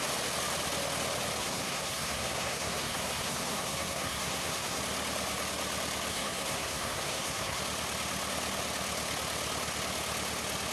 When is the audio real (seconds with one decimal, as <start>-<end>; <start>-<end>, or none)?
0.0-1.4; 4.8-6.1; 7.6-10.7